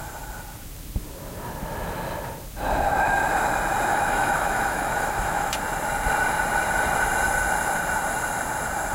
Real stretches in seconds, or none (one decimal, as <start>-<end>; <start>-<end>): 0.0-3.9; 5.6-8.9